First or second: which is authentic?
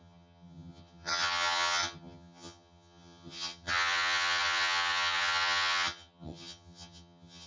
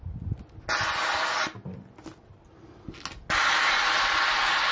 second